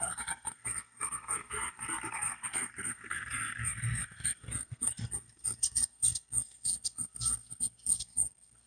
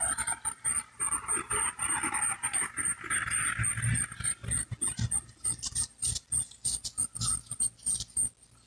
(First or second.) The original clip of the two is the second